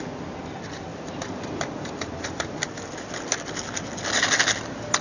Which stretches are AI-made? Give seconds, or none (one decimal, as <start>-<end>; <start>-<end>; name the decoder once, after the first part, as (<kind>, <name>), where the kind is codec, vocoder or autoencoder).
0.9-2.9 (vocoder, BigVGAN v2)